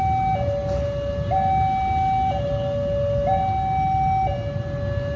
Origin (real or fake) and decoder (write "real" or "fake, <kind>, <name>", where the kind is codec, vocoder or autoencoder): real